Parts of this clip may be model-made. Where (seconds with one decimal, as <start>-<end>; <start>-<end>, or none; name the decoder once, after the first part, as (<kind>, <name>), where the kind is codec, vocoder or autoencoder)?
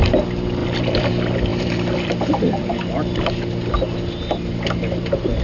0.6-1.1 (vocoder, BigVGAN v2); 1.5-2.6